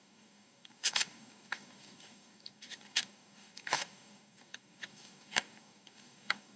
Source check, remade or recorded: remade